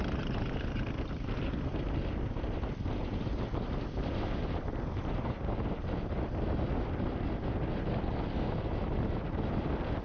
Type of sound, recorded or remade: recorded